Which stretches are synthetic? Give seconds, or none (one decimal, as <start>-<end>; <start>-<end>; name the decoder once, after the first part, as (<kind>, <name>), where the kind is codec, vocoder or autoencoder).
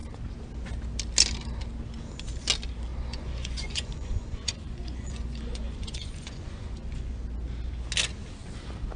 2.9-7.2 (vocoder, Vocos)